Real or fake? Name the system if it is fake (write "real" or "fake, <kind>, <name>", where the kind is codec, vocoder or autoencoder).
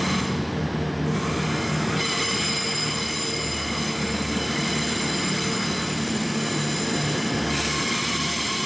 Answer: real